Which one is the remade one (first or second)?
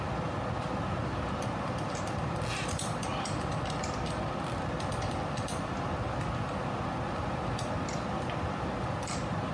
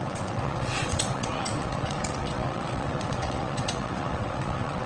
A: second